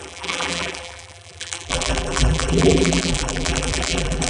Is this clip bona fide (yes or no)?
no